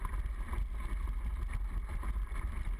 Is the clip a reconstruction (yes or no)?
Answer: no